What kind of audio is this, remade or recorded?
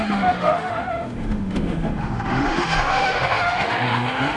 remade